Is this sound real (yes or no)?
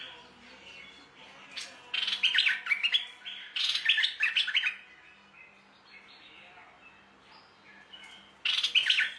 yes